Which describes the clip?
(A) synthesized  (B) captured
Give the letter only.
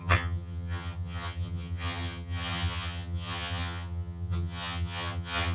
A